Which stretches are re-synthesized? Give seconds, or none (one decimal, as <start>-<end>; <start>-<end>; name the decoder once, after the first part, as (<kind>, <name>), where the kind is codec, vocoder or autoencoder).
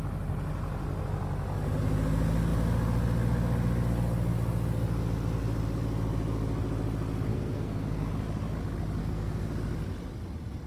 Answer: 7.3-8.1 (codec, SNAC); 9.0-9.5